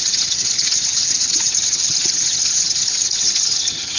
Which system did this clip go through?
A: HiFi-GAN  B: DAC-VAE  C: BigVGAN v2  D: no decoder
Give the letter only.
A